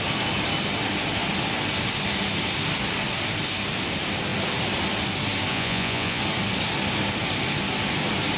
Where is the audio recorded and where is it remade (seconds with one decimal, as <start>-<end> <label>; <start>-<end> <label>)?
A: 0.0-5.5 recorded; 5.5-6.2 remade; 6.2-8.4 recorded